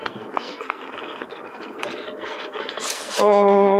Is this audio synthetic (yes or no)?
yes